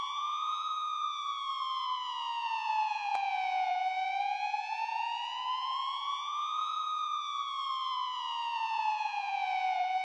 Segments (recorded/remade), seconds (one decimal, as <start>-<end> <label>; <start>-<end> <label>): 0.0-10.0 remade